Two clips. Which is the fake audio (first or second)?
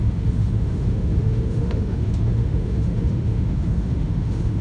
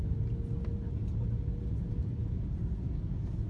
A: first